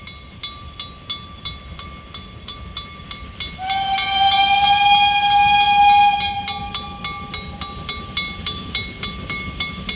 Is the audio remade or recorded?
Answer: recorded